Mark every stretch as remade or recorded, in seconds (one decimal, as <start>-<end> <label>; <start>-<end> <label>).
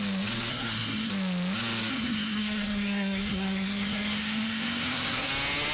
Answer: 0.0-0.5 recorded; 0.5-1.1 remade; 1.1-1.9 recorded; 1.9-5.3 remade; 5.3-5.7 recorded